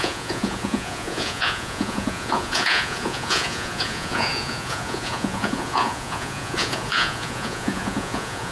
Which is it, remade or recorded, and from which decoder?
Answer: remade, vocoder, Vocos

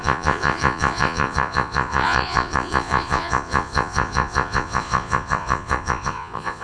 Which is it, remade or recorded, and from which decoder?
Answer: remade, vocoder, Vocos